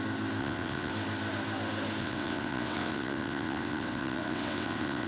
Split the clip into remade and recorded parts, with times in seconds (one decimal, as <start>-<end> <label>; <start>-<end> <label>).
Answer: 0.0-0.4 recorded; 0.4-0.9 remade; 0.9-2.0 recorded; 2.0-5.1 remade